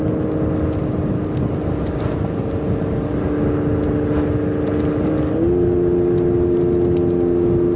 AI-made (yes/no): no